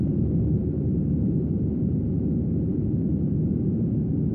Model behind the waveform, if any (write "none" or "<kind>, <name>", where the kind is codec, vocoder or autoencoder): none